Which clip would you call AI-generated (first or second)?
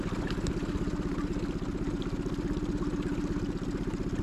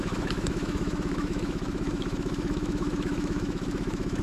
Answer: second